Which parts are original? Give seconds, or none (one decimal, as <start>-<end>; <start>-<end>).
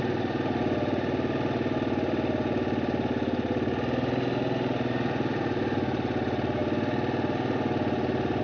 0.0-8.4